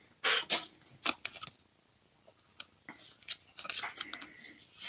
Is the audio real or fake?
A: real